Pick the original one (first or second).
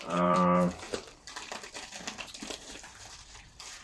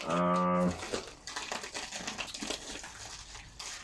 second